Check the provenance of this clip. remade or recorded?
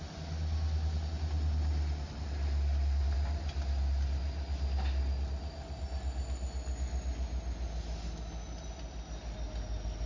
recorded